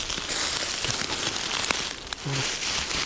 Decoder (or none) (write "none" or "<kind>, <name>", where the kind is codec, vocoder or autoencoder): none